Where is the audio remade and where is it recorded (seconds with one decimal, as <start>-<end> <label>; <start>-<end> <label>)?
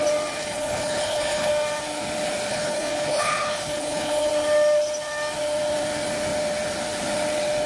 0.0-0.4 recorded; 0.4-1.5 remade; 1.5-2.5 recorded; 2.5-4.3 remade; 4.3-7.7 recorded